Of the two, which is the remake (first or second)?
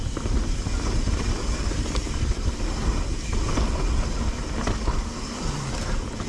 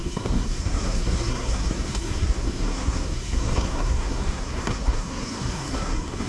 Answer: second